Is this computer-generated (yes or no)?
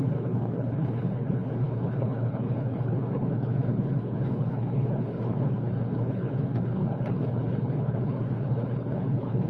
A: yes